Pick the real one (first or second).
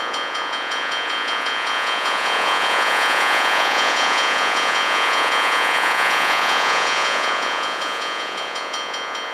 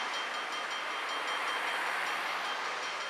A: second